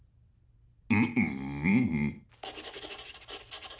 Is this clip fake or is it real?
real